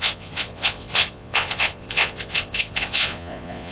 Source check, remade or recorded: remade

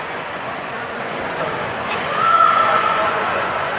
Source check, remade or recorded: remade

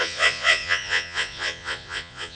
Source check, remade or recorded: remade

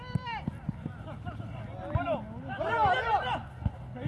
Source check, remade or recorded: recorded